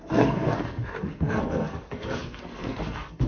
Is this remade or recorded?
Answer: remade